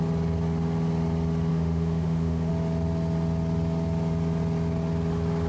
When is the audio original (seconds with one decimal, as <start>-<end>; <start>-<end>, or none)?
0.0-1.5; 2.5-5.5